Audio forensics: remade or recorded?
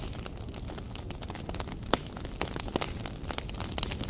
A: recorded